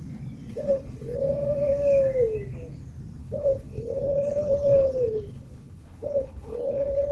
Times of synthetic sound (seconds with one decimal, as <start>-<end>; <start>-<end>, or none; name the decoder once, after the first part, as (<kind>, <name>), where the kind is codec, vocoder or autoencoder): 0.5-1.2 (codec, HILCodec); 3.2-7.1